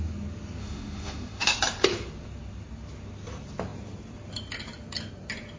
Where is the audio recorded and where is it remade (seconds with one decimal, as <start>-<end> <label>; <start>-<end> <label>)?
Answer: 0.0-0.6 recorded; 0.6-1.6 remade; 1.6-5.6 recorded